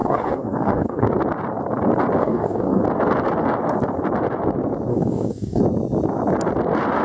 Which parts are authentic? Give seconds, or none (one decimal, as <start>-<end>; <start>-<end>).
1.1-2.2; 2.8-4.9; 5.6-7.0